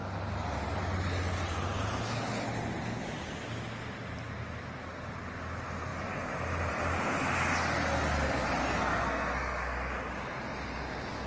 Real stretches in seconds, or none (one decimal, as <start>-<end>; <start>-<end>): 0.0-8.6; 10.1-11.3